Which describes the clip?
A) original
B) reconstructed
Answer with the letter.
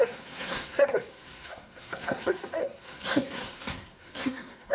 B